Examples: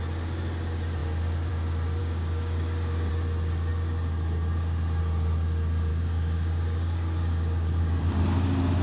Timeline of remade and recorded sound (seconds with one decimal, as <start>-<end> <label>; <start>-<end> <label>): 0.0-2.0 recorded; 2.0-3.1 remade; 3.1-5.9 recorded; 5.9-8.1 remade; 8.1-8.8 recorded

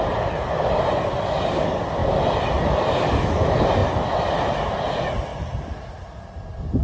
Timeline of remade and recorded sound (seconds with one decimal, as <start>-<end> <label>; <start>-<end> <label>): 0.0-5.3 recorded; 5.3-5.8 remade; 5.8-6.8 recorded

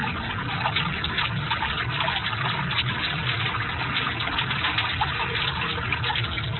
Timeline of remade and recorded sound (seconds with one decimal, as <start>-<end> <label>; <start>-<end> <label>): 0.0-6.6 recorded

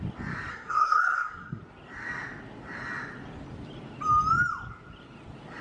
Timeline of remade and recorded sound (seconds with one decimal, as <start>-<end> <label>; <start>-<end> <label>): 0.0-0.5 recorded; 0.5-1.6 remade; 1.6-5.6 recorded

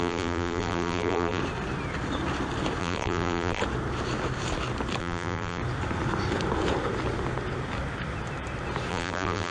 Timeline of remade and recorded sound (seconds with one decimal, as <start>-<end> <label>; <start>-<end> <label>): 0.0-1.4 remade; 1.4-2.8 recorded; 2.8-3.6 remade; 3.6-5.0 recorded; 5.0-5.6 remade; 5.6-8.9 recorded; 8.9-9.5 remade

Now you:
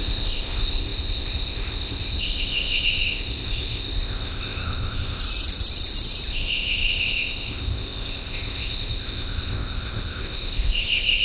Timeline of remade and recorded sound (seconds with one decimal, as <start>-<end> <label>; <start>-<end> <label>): 0.0-5.2 remade; 5.2-6.3 recorded; 6.3-11.2 remade